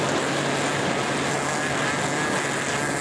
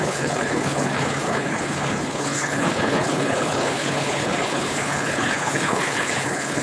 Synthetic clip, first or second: second